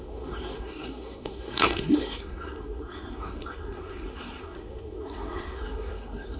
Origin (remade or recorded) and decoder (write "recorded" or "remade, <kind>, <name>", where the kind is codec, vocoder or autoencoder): remade, codec, SNAC